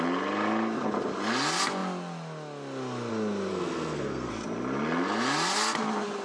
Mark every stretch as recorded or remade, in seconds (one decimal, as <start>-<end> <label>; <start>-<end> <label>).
0.0-3.5 recorded; 3.5-4.3 remade; 4.3-6.2 recorded